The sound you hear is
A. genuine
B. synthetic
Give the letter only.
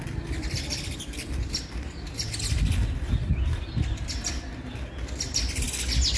A